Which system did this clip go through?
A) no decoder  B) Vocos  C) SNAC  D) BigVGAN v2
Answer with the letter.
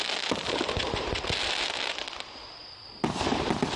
A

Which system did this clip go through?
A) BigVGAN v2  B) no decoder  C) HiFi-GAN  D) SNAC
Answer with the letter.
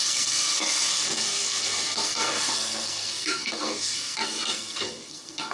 D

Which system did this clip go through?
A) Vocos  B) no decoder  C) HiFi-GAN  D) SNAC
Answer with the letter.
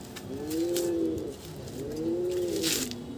B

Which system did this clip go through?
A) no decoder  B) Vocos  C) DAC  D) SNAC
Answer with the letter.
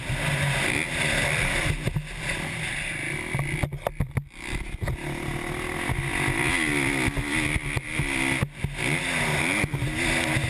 A